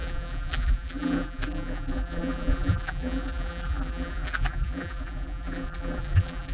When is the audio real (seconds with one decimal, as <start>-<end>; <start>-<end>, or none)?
none